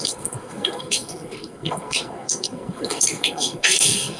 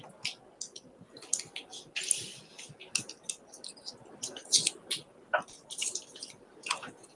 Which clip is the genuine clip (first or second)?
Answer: second